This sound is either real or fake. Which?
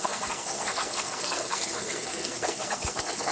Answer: fake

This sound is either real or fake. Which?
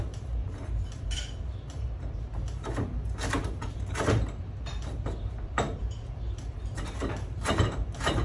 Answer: fake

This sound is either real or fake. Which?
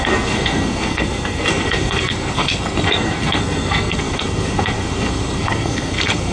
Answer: fake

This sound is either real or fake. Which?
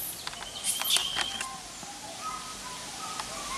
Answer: real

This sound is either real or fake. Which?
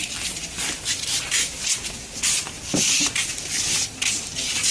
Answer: real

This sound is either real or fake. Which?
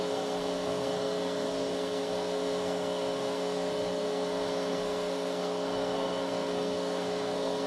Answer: fake